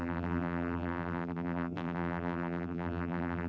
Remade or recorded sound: remade